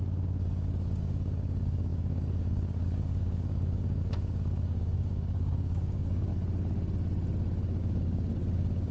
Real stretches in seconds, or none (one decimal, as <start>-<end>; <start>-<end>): 6.3-7.8